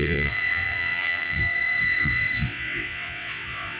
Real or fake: fake